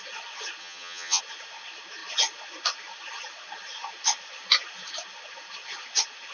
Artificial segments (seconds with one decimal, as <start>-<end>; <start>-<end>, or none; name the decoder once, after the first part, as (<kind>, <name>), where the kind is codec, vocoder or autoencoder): 0.6-1.2 (vocoder, HiFi-GAN)